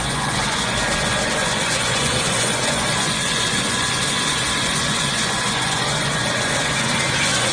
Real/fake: fake